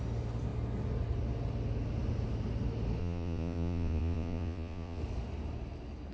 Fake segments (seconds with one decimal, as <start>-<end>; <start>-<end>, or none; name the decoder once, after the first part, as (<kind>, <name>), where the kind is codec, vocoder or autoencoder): 3.0-5.0 (vocoder, Vocos)